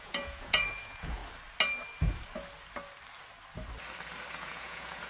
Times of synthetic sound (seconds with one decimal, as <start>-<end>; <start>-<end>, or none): 0.0-1.2; 4.3-5.1